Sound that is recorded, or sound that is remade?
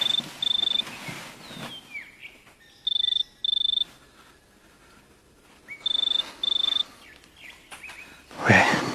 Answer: recorded